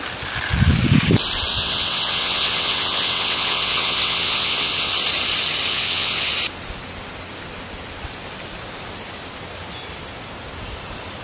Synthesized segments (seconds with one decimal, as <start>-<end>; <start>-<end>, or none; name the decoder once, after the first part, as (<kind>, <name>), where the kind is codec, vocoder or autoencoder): 1.5-4.9 (vocoder, WaveNeXt); 5.7-6.3